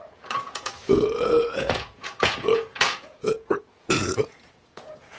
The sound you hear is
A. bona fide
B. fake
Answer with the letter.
B